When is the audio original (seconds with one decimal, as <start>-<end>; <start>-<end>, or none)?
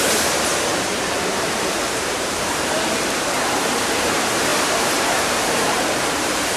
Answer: none